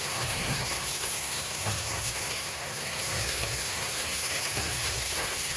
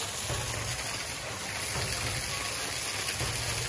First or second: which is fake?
first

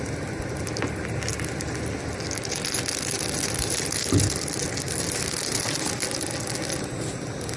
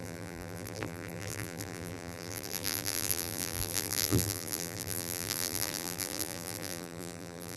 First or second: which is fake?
second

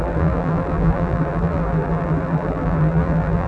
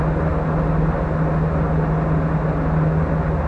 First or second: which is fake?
first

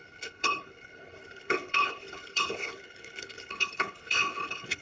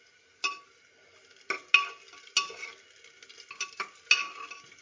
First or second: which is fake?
first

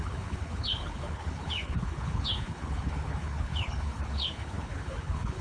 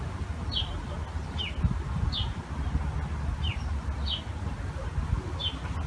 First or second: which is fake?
first